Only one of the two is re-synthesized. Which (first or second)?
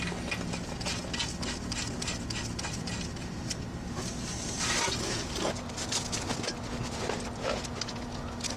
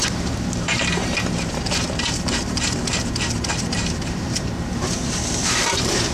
second